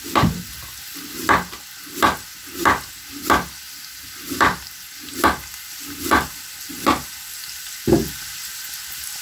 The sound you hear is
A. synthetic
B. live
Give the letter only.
B